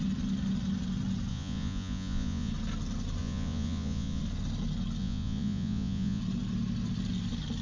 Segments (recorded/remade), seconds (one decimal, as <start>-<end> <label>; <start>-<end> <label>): 0.0-1.3 recorded; 1.3-2.5 remade; 2.5-3.2 recorded; 3.2-4.2 remade; 4.2-5.0 recorded; 5.0-6.2 remade; 6.2-7.6 recorded